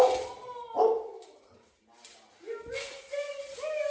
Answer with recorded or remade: recorded